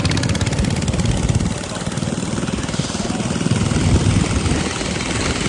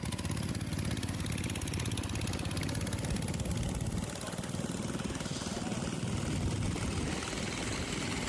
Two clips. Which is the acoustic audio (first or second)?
second